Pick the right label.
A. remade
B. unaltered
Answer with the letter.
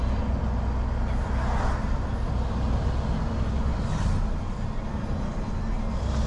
B